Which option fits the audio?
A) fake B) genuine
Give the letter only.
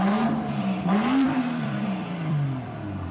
A